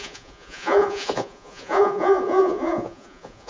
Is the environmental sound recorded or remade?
remade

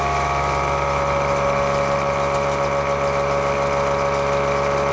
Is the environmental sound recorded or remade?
recorded